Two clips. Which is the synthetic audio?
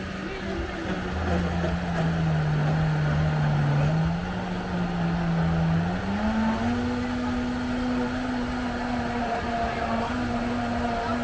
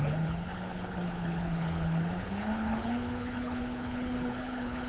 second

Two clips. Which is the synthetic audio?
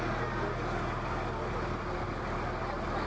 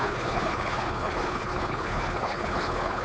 second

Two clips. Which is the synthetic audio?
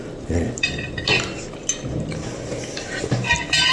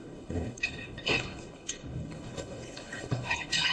second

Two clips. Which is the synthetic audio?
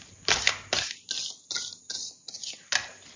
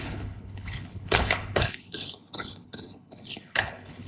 second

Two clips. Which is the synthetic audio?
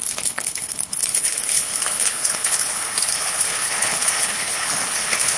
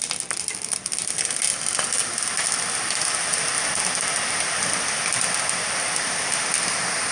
first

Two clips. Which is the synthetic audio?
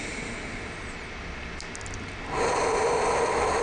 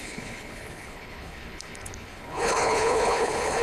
second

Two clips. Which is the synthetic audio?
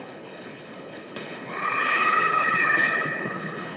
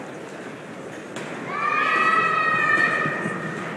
first